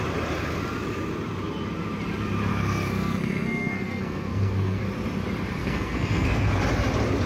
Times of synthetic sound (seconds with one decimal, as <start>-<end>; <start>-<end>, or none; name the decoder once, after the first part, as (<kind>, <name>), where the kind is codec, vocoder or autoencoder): 2.5-4.8 (codec, SNAC); 5.6-6.6